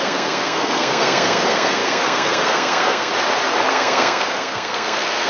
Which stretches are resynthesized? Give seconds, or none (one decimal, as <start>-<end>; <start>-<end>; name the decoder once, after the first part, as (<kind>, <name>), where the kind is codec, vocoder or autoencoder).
0.0-3.1 (codec, SNAC); 3.7-5.3

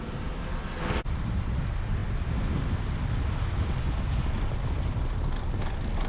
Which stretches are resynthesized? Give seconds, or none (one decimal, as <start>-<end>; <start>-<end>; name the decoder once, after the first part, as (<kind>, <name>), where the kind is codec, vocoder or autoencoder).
none